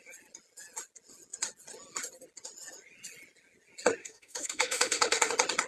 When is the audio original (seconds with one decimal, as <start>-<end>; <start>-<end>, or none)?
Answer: 0.0-4.0; 5.3-5.7